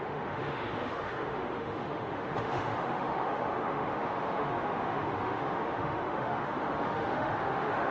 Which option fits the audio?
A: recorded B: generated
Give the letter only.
B